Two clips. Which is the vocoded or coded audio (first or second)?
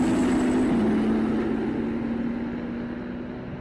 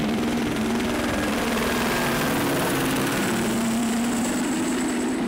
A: second